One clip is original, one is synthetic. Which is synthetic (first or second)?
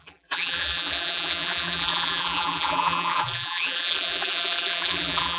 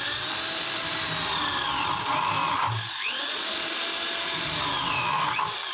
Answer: first